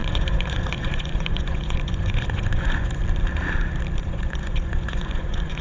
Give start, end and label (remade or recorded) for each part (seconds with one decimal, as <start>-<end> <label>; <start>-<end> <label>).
0.0-3.0 remade; 3.0-4.0 recorded; 4.0-5.6 remade